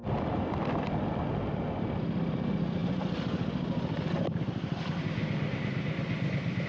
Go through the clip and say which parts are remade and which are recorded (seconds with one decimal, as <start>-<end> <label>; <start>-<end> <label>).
0.0-6.7 recorded